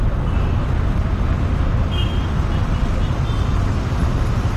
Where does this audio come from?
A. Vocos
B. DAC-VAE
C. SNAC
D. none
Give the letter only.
D